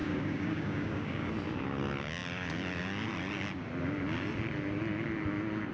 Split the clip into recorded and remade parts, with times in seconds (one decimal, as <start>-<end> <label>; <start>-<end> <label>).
0.0-1.3 remade; 1.3-5.7 recorded

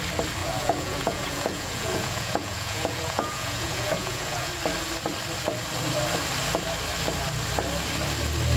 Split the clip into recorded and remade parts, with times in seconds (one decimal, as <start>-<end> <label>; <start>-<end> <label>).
0.0-0.4 recorded; 0.4-4.5 remade; 4.5-8.6 recorded

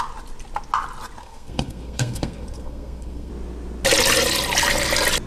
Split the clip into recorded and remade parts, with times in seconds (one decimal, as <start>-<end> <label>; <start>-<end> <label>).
0.0-1.2 recorded; 1.2-3.3 remade; 3.3-5.3 recorded

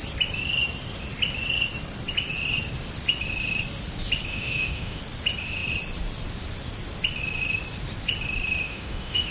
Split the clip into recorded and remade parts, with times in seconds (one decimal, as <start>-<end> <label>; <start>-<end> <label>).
0.0-4.3 recorded; 4.3-5.0 remade; 5.0-8.6 recorded; 8.6-9.3 remade

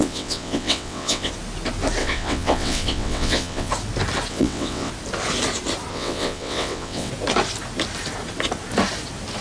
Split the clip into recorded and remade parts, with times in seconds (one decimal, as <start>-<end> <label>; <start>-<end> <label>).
0.0-1.3 remade; 1.3-2.0 recorded; 2.0-3.7 remade; 3.7-4.3 recorded; 4.3-4.9 remade; 4.9-5.9 recorded; 5.9-7.1 remade; 7.1-9.4 recorded

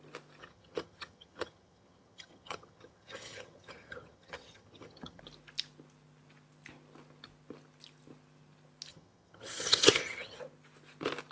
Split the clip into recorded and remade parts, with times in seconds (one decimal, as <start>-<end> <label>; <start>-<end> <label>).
0.0-0.4 recorded; 0.4-5.2 remade; 5.2-8.9 recorded; 8.9-10.4 remade; 10.4-11.3 recorded